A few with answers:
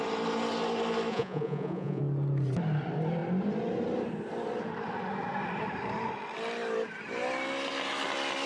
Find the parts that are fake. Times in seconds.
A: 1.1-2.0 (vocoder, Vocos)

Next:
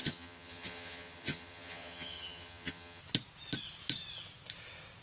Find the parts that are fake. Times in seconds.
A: 0.0-3.0 (vocoder, HiFi-GAN)

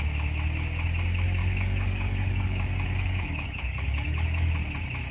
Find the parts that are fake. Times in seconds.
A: 1.4-4.5 (codec, DAC)

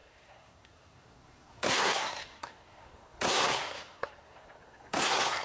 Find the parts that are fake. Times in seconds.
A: 0.0-5.4 (codec, SNAC)

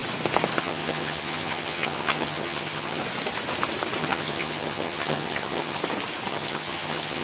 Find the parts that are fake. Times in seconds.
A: 0.6-3.0 (vocoder, HiFi-GAN); 4.0-5.8; 6.3-7.2

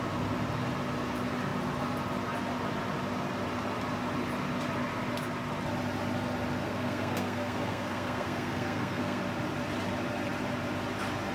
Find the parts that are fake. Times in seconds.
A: 6.6-9.2 (codec, SNAC)

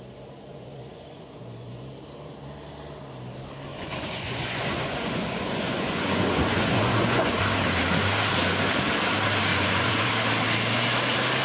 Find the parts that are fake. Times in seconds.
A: 0.5-1.8 (vocoder, Vocos); 3.7-7.4; 9.5-10.1

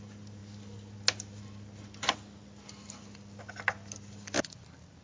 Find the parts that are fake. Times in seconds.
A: none